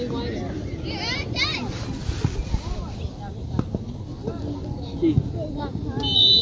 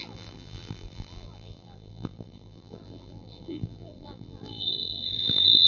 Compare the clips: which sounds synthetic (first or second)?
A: second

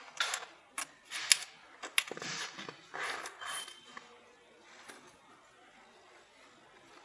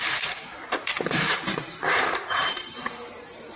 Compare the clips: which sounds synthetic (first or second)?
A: second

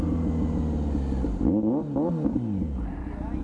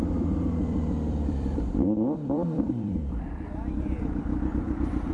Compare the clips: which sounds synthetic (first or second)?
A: second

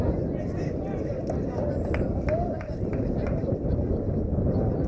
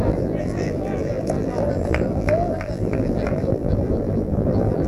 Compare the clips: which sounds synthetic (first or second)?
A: second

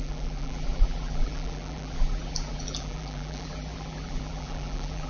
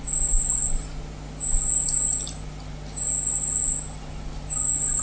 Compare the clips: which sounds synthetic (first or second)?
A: first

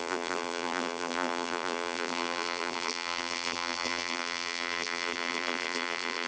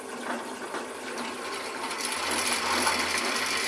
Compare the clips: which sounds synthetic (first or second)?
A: first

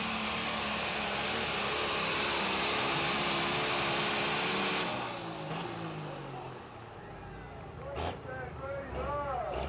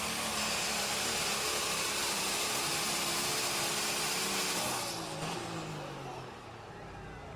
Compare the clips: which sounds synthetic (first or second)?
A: second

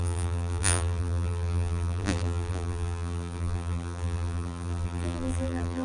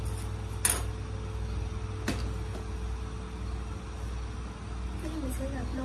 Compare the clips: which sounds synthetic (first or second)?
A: first